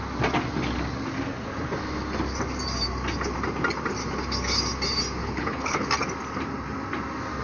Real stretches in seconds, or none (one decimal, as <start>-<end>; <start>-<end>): 0.0-5.2; 5.9-7.4